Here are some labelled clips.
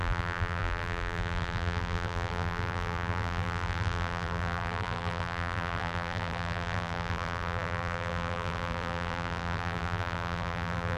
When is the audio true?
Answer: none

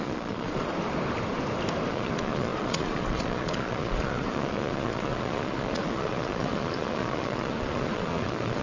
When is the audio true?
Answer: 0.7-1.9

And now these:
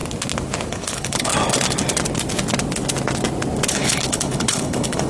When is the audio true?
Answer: 0.0-0.7; 1.3-3.7

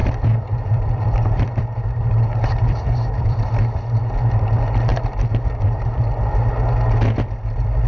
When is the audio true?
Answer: 3.5-4.9; 6.0-7.9